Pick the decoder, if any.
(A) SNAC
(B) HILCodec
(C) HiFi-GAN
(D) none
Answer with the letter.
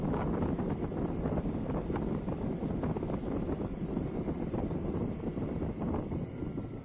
D